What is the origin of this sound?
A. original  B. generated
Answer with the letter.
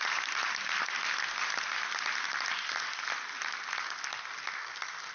A